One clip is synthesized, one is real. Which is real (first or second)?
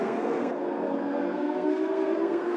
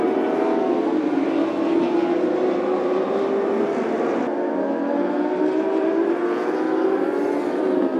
second